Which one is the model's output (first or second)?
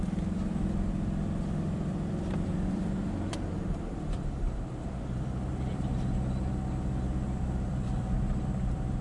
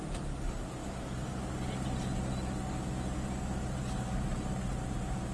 first